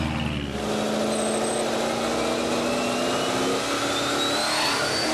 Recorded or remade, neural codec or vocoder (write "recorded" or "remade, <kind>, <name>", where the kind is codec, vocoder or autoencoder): recorded